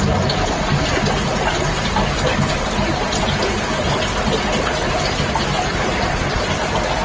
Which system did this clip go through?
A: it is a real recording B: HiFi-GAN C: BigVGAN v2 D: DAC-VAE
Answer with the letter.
A